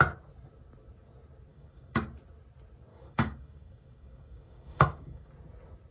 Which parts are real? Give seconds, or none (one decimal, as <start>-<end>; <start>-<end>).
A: 0.0-1.5; 2.0-2.9; 5.3-5.9